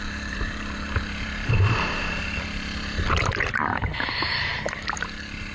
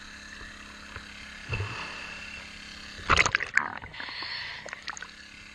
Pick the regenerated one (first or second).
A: first